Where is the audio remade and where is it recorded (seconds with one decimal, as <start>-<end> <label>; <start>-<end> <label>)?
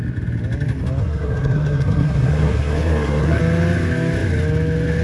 0.0-1.0 recorded; 1.0-3.4 remade; 3.4-5.0 recorded